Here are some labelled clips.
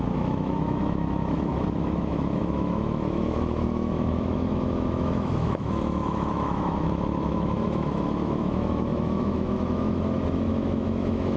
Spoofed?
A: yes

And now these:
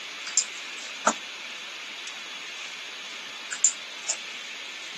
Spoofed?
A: no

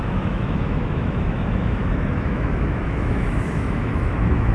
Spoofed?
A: yes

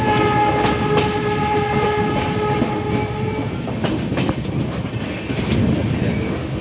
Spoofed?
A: no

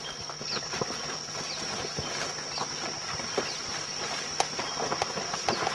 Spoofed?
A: no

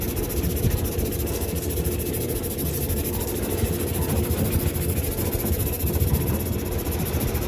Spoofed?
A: no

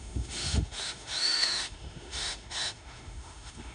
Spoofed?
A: yes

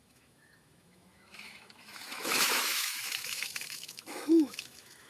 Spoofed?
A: yes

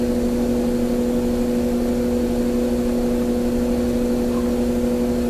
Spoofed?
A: no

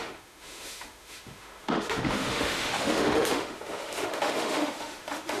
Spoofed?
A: yes